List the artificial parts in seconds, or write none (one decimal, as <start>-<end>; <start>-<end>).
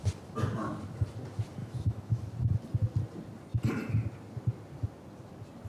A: 1.6-2.2